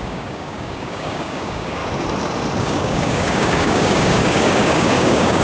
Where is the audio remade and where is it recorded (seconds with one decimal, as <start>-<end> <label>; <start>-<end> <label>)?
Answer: 0.0-1.8 remade; 1.8-2.6 recorded; 2.6-5.4 remade